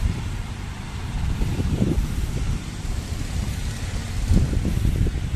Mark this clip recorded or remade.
remade